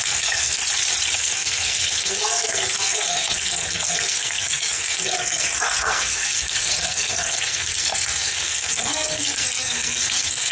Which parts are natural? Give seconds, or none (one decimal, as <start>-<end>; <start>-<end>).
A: 0.6-1.1